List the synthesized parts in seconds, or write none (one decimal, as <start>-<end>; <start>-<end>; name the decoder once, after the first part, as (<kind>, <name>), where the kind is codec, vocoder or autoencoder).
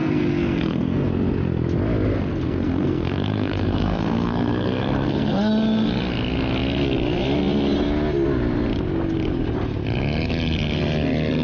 0.0-1.1 (codec, SNAC); 2.3-5.5